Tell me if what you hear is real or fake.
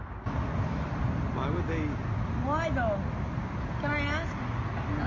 real